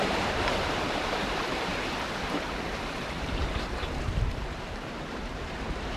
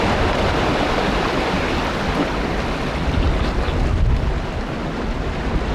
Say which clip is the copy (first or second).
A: first